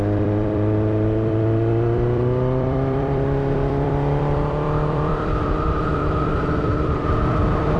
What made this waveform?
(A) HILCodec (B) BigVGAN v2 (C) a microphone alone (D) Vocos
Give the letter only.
B